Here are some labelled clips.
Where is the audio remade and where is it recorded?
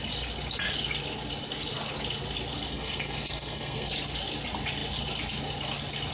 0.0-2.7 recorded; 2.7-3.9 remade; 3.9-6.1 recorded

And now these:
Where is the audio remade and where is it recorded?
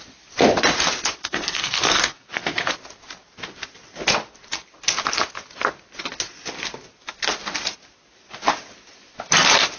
0.0-1.2 recorded; 1.2-2.7 remade; 2.7-9.8 recorded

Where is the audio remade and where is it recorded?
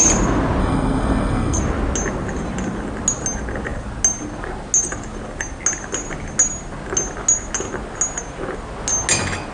0.0-0.6 recorded; 0.6-1.6 remade; 1.6-9.5 recorded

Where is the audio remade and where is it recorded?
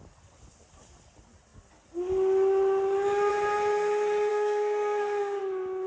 0.0-4.3 recorded; 4.3-5.4 remade; 5.4-5.9 recorded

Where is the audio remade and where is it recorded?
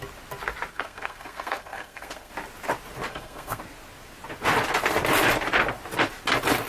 0.0-0.7 recorded; 0.7-2.3 remade; 2.3-3.1 recorded; 3.1-3.6 remade; 3.6-6.7 recorded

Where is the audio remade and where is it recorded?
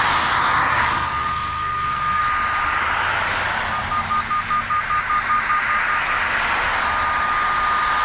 0.0-0.7 recorded; 0.7-2.2 remade; 2.2-8.0 recorded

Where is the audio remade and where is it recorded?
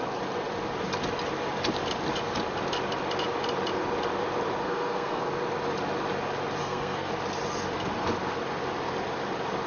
0.0-4.6 recorded; 4.6-5.2 remade; 5.2-6.6 recorded; 6.6-7.1 remade; 7.1-9.7 recorded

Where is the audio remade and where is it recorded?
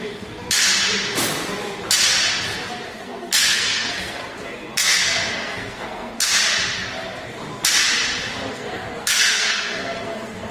0.0-0.6 remade; 0.6-2.9 recorded; 2.9-6.3 remade; 6.3-8.5 recorded; 8.5-10.5 remade